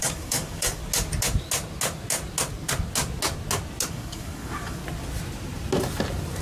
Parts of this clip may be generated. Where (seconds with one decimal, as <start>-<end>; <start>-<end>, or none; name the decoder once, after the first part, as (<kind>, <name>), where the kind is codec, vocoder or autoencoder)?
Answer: 0.0-0.8 (codec, DAC); 3.9-4.8